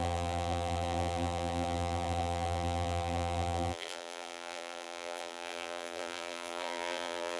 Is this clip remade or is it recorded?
remade